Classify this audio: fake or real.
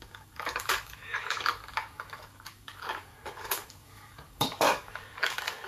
fake